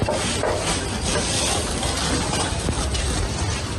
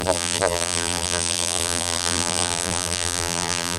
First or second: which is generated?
second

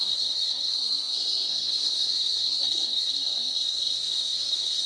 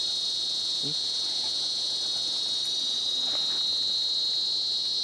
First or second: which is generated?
first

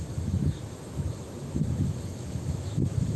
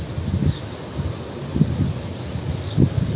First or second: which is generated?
first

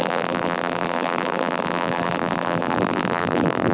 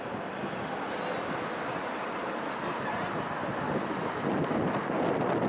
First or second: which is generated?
first